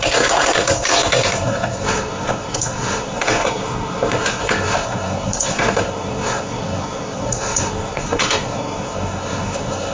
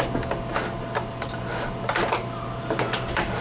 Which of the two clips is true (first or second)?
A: second